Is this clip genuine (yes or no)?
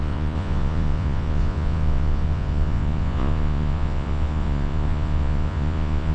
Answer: no